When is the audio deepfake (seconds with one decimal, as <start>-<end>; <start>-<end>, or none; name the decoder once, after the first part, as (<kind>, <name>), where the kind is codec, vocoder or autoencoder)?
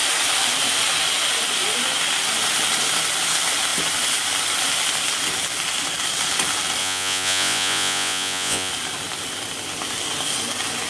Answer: 6.8-8.7 (vocoder, Vocos)